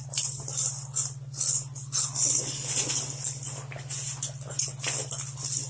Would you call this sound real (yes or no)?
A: yes